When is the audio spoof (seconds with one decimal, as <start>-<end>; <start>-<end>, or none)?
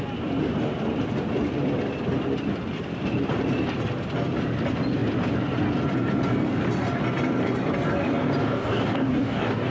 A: 8.4-9.7